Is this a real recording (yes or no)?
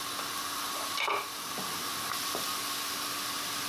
yes